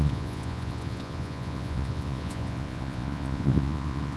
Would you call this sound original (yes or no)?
no